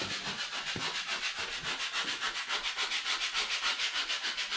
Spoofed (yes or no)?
no